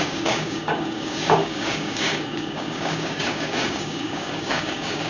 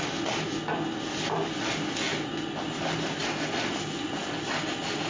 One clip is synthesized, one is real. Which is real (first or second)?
second